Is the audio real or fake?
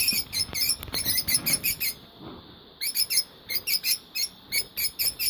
real